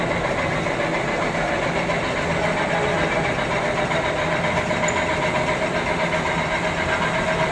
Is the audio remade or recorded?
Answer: recorded